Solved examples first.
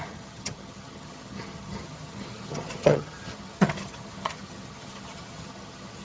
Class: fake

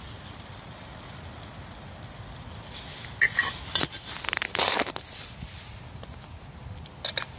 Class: real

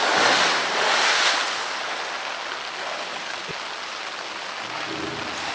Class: real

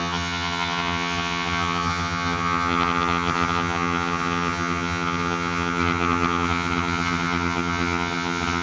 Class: fake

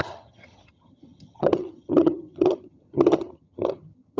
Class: fake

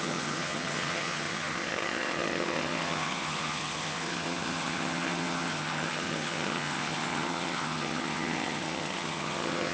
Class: fake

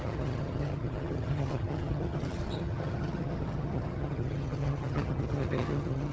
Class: fake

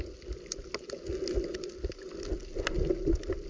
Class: real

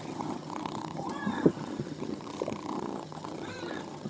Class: fake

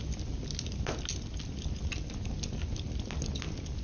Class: real